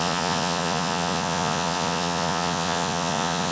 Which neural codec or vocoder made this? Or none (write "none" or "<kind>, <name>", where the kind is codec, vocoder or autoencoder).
vocoder, Vocos